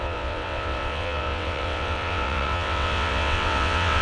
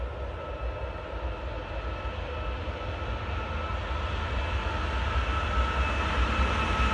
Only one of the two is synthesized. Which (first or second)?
first